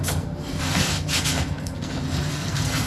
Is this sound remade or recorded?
remade